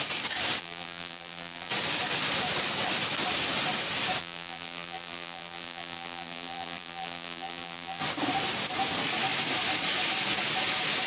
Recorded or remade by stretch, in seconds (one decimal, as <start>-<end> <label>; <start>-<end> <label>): 0.0-0.6 recorded; 0.6-1.7 remade; 1.7-4.2 recorded; 4.2-8.0 remade; 8.0-11.1 recorded